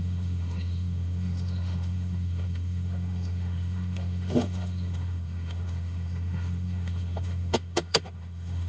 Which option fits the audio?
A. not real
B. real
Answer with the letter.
A